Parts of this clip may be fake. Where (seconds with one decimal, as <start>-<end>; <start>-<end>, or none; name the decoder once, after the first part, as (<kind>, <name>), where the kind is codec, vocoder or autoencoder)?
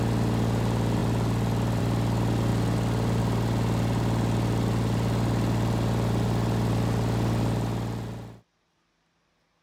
none